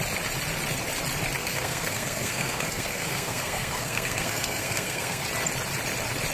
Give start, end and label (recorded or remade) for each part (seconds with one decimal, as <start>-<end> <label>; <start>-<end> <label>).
0.0-1.4 recorded; 1.4-5.2 remade; 5.2-6.3 recorded